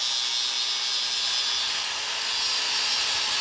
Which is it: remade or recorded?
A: recorded